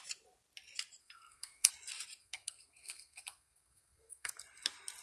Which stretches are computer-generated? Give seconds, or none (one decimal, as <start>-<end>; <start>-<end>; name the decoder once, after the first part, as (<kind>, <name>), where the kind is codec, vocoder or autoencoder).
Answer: 1.0-1.7 (codec, SNAC); 2.2-4.3